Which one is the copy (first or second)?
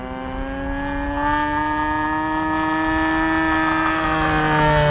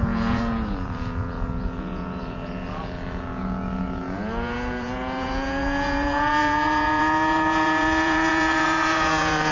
second